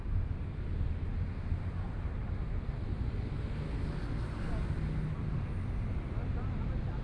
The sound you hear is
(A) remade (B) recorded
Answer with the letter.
B